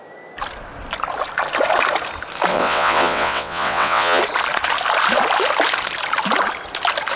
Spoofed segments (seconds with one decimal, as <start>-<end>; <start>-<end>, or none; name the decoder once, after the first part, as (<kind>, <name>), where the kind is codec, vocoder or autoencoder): 2.5-4.2 (vocoder, WaveNeXt)